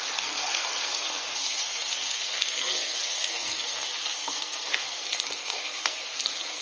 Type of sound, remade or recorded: remade